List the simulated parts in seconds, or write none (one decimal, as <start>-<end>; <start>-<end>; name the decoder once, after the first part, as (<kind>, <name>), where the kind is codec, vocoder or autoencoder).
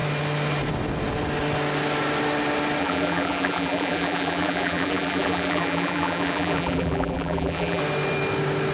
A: 2.8-7.8 (vocoder, BigVGAN v2)